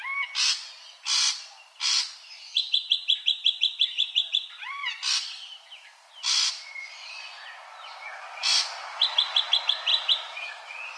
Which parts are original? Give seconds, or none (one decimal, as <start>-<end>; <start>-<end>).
0.0-3.4; 7.1-11.0